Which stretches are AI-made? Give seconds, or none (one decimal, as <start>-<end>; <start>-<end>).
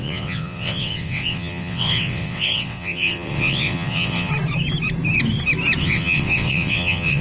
0.0-4.3; 5.8-7.2